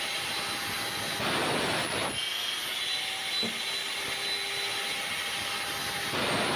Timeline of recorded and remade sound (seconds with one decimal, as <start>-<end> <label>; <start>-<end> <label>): 0.0-6.6 recorded